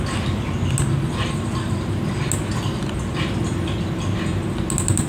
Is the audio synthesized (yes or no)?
no